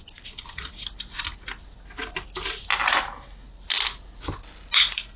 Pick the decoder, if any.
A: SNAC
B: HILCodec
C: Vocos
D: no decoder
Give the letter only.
D